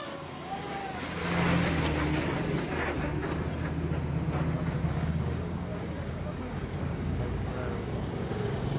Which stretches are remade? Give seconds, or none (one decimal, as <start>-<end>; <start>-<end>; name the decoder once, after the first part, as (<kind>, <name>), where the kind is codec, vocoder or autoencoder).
0.0-0.8 (codec, DAC); 4.8-8.8